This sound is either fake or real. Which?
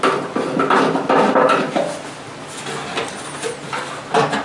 real